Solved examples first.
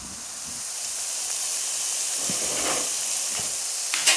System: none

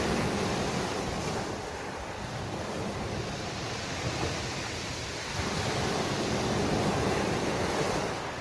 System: none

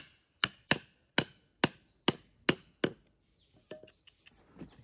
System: none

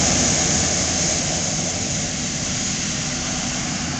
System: none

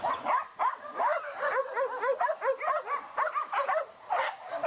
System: none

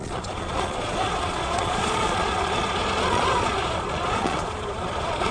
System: vocoder, Vocos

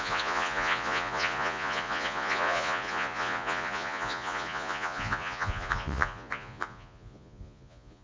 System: vocoder, Vocos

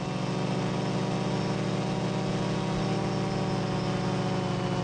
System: none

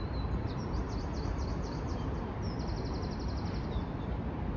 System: none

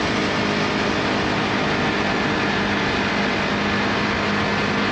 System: none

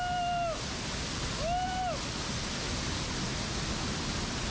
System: none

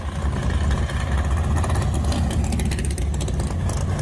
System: none